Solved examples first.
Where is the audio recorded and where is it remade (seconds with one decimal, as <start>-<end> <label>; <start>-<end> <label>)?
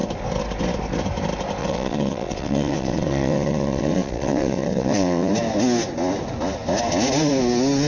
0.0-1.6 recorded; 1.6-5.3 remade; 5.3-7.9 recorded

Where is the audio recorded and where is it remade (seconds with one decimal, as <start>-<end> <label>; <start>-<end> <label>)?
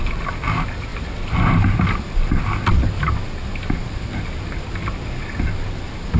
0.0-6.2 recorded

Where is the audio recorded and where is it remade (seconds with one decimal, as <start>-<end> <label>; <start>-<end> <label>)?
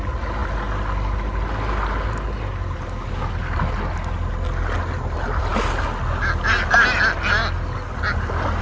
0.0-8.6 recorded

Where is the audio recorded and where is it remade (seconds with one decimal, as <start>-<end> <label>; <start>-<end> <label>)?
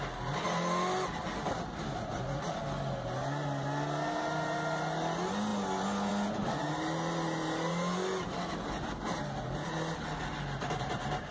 0.0-11.3 recorded